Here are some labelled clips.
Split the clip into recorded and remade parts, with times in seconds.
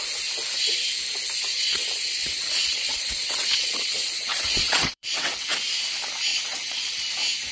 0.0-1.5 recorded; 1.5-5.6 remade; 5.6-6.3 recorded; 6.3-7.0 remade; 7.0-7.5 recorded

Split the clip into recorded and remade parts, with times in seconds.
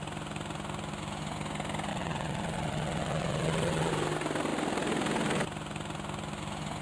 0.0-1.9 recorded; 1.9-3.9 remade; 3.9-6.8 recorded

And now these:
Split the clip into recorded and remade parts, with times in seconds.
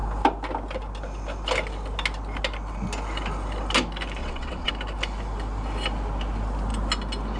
0.0-4.2 recorded; 4.2-4.7 remade; 4.7-7.4 recorded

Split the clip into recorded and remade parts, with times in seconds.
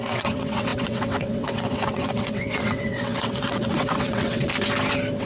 0.0-4.5 remade; 4.5-5.2 recorded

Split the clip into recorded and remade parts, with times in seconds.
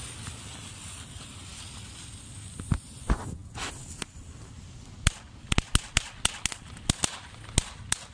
0.0-8.1 recorded